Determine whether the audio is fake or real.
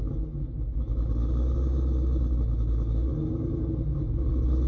real